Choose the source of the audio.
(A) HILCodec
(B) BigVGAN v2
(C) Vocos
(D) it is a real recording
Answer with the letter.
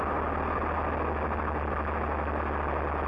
D